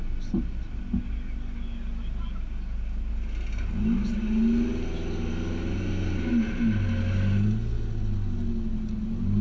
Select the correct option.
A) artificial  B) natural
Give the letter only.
B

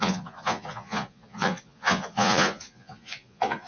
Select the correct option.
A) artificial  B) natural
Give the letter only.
A